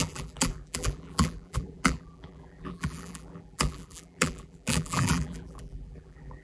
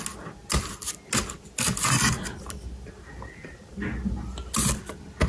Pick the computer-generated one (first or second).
first